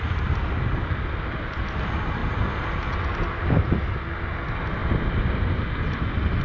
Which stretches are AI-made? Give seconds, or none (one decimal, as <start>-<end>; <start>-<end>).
none